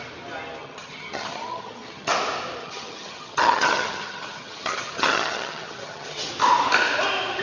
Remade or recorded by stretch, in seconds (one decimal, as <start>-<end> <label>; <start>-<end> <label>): 0.0-0.6 recorded; 0.6-2.1 remade; 2.1-2.6 recorded; 2.6-6.3 remade; 6.3-7.4 recorded